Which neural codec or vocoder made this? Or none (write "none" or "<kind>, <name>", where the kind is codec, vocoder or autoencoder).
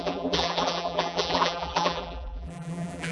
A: vocoder, BigVGAN v2